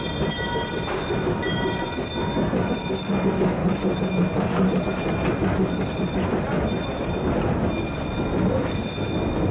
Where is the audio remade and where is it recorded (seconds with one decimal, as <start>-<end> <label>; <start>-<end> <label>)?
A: 0.0-9.5 recorded